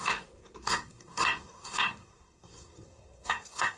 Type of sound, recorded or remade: remade